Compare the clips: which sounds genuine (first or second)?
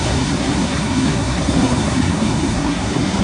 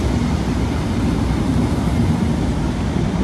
second